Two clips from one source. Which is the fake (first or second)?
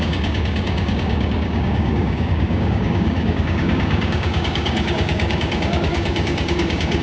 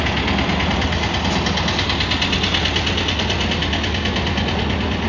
first